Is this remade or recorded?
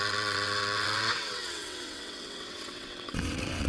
remade